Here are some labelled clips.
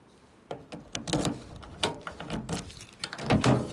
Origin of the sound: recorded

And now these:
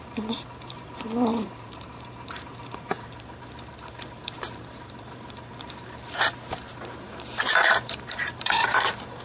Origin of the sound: remade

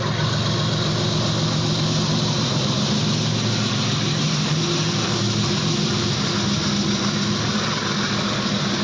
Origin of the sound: recorded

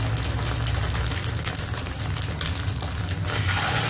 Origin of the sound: recorded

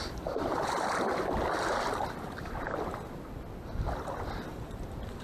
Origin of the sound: remade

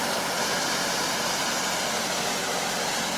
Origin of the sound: remade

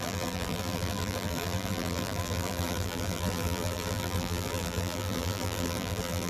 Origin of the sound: remade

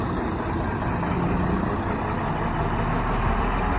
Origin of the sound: recorded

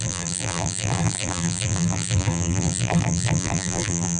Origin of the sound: remade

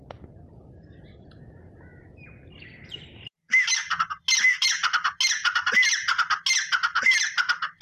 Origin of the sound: remade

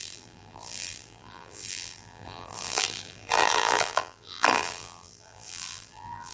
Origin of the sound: remade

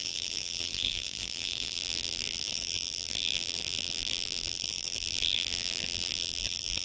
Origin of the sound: remade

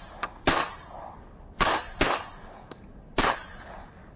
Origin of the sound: recorded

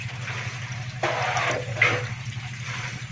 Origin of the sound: recorded